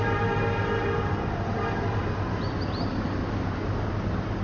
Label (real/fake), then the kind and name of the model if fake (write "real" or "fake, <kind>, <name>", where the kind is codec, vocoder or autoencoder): real